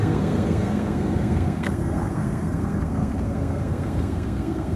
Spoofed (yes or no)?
yes